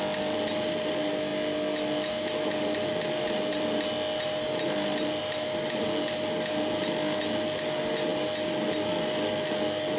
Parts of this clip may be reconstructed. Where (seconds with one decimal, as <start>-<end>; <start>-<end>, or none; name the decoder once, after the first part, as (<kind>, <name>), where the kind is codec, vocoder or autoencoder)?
none